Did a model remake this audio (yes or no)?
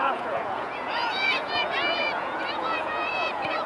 yes